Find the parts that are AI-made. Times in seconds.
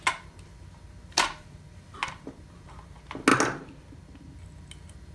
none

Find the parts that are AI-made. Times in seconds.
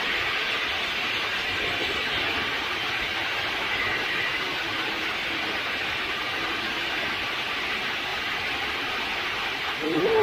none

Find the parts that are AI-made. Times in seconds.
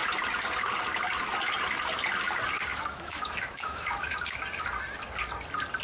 2.7-4.4 (autoencoder, DAC-VAE)